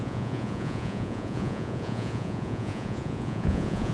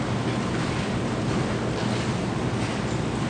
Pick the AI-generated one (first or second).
first